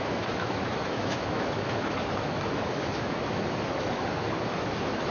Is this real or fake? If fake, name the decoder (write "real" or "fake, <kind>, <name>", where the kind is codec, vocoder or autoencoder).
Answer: fake, autoencoder, DAC-VAE